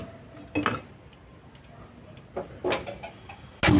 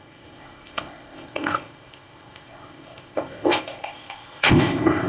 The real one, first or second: first